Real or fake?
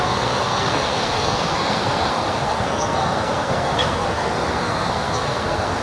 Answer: fake